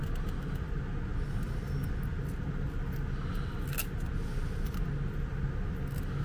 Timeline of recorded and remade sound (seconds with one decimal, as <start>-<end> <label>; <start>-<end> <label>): 0.0-6.2 recorded